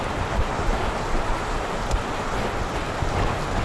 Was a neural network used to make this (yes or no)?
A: no